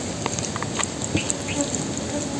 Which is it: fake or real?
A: real